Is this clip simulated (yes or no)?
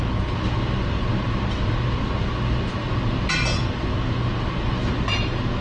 no